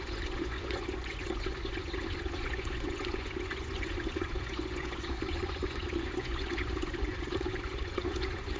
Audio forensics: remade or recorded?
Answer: remade